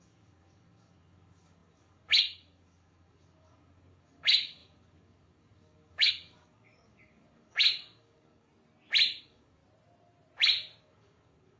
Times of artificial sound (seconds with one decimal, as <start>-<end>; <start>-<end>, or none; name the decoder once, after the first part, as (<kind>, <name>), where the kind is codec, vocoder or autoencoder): 0.0-8.5 (codec, DAC); 9.2-9.6; 10.8-11.6